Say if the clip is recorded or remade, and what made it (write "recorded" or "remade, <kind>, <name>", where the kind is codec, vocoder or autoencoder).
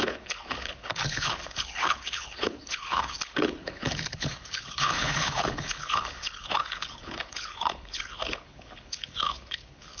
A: remade, codec, HILCodec